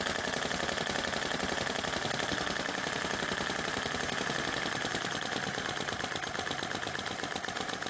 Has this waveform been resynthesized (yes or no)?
no